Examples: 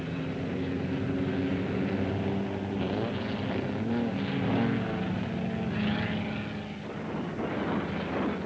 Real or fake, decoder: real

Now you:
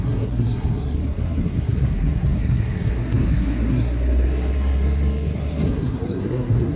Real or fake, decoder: fake, codec, SNAC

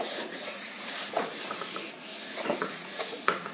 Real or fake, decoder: fake, vocoder, Vocos